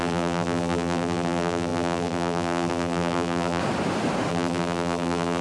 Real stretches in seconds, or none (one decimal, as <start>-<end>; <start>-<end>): 3.6-4.3